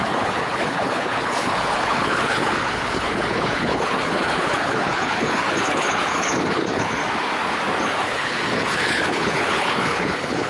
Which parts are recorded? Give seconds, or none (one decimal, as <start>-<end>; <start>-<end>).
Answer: 7.0-7.8